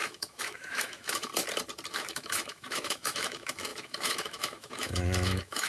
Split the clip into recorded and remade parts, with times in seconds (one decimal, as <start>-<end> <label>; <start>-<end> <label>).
0.0-1.3 remade; 1.3-1.9 recorded; 1.9-5.7 remade